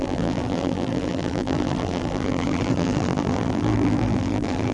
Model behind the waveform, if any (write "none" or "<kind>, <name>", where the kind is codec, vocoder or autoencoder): vocoder, BigVGAN v2